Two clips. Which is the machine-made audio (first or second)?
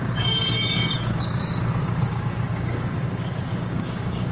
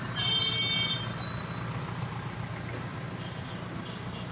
first